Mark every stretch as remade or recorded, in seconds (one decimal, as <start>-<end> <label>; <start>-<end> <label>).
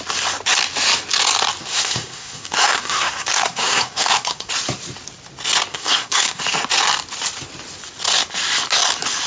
0.0-1.7 recorded; 1.7-4.5 remade; 4.5-5.7 recorded; 5.7-6.4 remade; 6.4-9.3 recorded